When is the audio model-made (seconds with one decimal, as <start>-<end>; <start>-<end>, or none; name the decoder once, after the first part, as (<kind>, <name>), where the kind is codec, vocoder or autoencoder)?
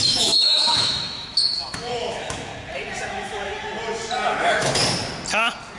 0.0-2.5 (autoencoder, DAC-VAE); 3.0-3.5; 4.3-4.8